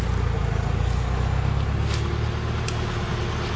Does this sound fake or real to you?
real